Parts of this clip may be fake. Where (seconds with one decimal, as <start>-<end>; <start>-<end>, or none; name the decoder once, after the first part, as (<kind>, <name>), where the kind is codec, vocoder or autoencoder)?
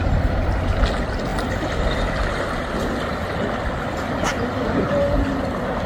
none